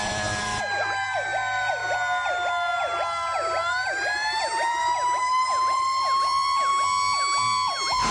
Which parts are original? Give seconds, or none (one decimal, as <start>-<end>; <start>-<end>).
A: 1.8-3.7; 6.7-8.1

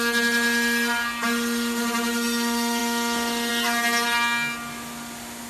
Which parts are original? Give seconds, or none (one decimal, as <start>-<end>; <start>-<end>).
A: 0.0-5.5

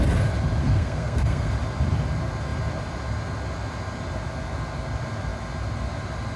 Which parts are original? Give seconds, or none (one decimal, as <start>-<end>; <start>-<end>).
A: 0.0-0.6; 1.5-6.4